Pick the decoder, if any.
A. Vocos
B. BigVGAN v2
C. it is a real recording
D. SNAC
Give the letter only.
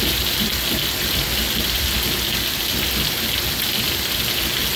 C